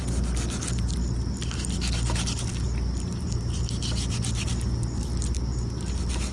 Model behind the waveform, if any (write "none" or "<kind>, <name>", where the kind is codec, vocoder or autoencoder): none